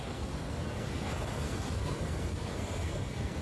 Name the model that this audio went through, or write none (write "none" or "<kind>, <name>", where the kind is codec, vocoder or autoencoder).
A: codec, SNAC